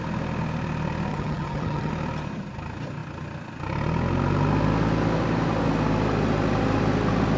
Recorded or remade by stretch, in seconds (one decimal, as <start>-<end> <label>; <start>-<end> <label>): 0.0-1.1 recorded; 1.1-1.9 remade; 1.9-7.4 recorded